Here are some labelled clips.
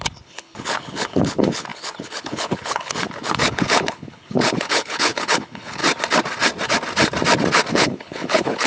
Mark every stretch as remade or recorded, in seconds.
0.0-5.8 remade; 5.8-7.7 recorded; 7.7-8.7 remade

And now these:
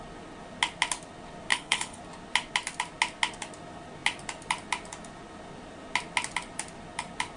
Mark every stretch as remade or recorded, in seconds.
0.0-1.5 recorded; 1.5-2.0 remade; 2.0-7.4 recorded

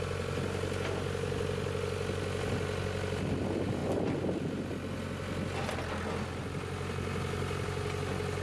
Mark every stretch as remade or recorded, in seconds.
0.0-8.4 recorded

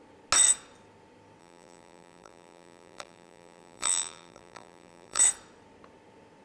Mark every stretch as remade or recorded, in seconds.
0.0-1.4 recorded; 1.4-5.2 remade; 5.2-6.4 recorded